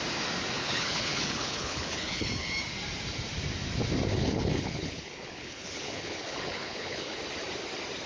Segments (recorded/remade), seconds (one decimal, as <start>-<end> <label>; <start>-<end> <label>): 0.0-0.6 recorded; 0.6-2.3 remade; 2.3-4.1 recorded; 4.1-7.2 remade; 7.2-8.1 recorded